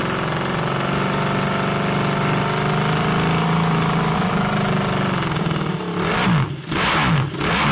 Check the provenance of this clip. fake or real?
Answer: real